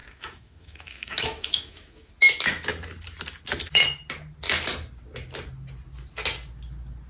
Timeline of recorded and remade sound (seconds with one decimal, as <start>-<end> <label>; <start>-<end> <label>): 0.0-2.1 remade; 2.1-7.1 recorded